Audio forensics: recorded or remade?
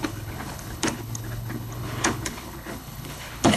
remade